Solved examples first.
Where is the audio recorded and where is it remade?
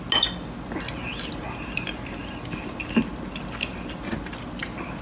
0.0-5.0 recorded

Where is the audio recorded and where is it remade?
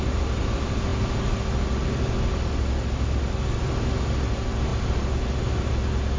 0.0-6.2 recorded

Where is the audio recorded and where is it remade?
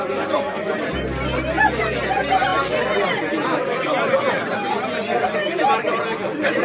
0.0-6.6 recorded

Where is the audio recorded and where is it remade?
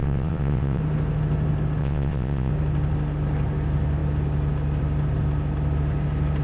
0.0-0.8 remade; 0.8-1.8 recorded; 1.8-2.5 remade; 2.5-6.4 recorded